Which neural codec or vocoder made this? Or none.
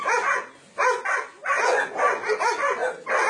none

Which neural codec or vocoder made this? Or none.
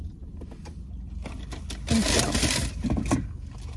none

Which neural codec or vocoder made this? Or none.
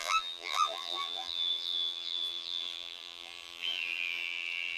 vocoder, BigVGAN v2